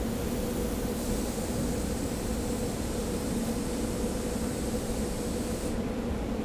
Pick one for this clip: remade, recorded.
remade